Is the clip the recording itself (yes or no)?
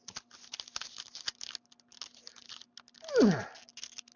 yes